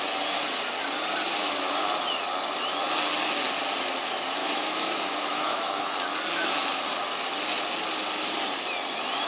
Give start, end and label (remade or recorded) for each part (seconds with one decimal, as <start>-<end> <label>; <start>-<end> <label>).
0.0-4.4 recorded; 4.4-5.9 remade; 5.9-9.3 recorded